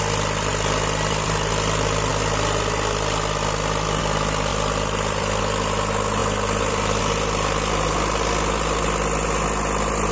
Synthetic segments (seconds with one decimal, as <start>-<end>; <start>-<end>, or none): 0.5-1.5; 4.5-5.4; 6.2-7.0